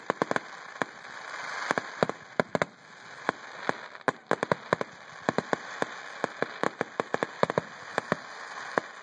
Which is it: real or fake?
real